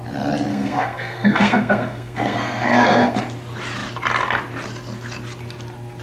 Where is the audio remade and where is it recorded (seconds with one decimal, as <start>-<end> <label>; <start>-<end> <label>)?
0.0-0.5 recorded; 0.5-3.2 remade; 3.2-6.0 recorded